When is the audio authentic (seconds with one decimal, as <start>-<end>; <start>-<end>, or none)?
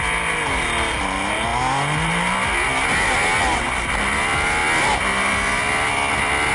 0.0-6.5